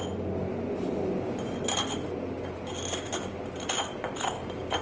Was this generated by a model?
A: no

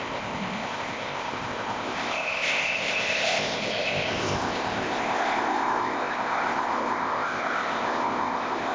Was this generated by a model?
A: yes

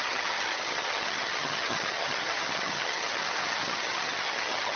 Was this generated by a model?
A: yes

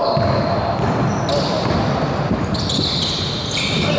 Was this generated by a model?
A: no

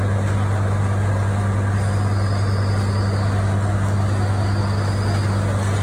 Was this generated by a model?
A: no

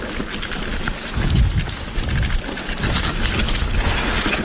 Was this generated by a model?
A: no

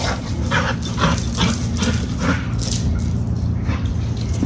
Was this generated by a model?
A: no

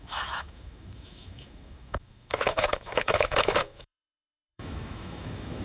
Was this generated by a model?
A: yes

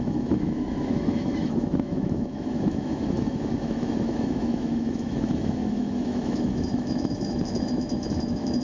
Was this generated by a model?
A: yes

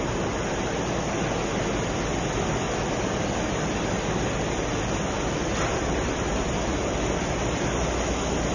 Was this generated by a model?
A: no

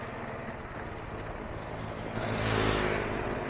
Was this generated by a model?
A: no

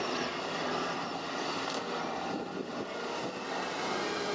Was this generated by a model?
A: no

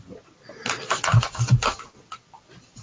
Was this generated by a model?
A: no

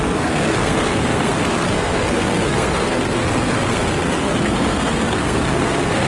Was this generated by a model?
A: yes